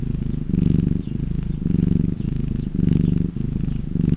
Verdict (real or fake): real